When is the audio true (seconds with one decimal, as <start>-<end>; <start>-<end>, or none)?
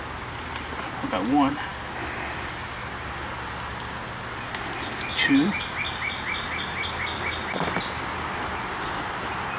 0.0-9.6